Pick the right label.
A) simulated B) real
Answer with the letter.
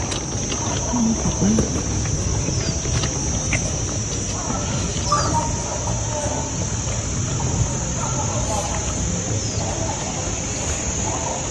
B